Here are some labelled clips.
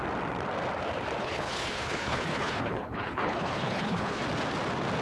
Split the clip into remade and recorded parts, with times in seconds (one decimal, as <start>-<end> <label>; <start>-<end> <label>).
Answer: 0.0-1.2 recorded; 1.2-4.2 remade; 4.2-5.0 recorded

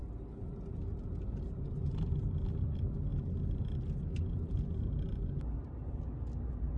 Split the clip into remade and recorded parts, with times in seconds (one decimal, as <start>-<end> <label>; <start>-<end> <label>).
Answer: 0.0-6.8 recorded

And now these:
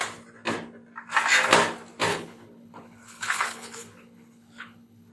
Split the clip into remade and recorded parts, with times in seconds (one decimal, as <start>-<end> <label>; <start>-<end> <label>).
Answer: 0.0-2.1 recorded; 2.1-5.1 remade